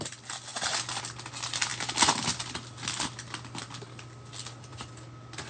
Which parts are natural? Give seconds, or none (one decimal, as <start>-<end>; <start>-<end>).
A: 0.0-5.5